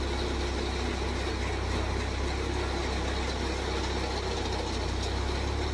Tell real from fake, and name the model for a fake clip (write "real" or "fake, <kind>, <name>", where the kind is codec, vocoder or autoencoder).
real